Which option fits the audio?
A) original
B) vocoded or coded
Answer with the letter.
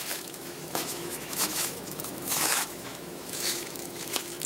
B